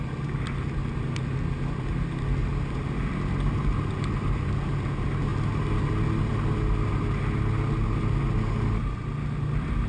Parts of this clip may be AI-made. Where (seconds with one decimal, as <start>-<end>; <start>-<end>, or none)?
none